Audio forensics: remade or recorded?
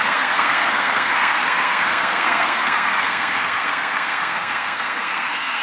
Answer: remade